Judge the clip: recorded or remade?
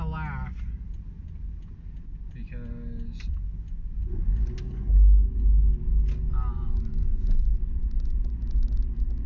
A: recorded